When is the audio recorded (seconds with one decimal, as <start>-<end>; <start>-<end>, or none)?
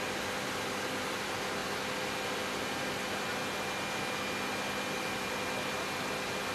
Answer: 0.0-6.5